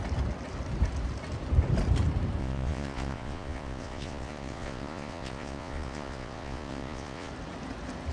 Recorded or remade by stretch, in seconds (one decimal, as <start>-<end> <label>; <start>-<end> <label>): 0.0-2.4 recorded; 2.4-7.3 remade; 7.3-8.1 recorded